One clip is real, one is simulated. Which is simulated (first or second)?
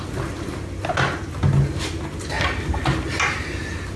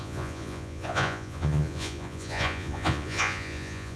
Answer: second